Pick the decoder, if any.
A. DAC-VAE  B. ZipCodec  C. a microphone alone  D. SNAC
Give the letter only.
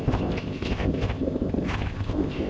B